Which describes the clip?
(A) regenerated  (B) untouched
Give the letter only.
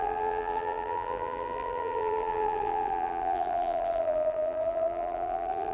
A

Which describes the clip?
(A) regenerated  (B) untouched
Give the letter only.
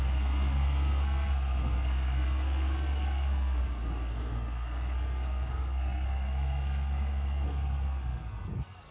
A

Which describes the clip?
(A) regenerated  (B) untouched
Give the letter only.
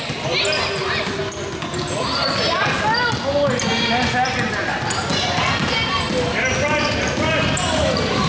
B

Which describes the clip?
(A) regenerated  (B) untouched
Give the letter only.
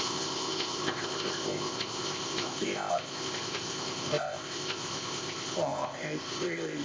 A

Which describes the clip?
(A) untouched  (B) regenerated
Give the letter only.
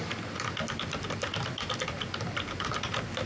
A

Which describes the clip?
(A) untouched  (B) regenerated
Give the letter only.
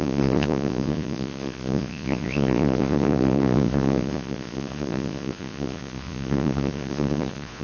B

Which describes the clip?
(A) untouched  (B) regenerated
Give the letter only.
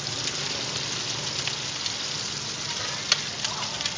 A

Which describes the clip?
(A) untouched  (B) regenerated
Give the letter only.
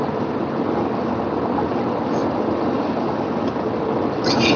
A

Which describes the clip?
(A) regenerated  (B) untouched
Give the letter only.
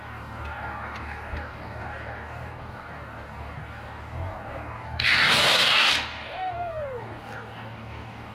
A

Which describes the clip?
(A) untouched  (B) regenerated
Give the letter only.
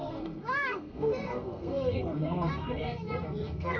B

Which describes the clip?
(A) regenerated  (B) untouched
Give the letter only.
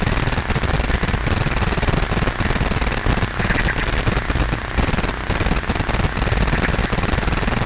B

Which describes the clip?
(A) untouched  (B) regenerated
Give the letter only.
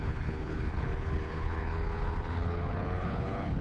B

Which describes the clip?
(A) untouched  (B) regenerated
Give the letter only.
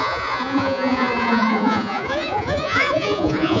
B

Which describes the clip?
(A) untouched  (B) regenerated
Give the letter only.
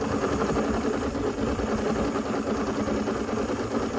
A